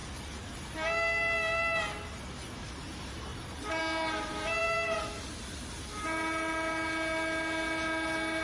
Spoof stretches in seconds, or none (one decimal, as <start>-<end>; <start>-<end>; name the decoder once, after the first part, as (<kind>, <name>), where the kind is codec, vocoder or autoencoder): 3.3-3.8 (vocoder, BigVGAN v2); 4.6-5.3